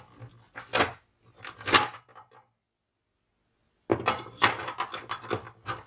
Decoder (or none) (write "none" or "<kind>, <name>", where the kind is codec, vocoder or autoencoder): none